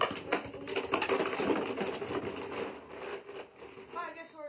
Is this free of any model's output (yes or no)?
yes